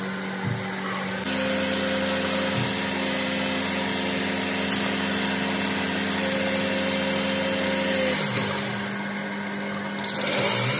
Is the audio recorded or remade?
recorded